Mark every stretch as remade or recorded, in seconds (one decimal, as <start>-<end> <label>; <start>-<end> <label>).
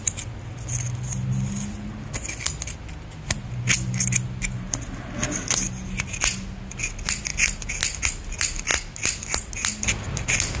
0.0-10.6 recorded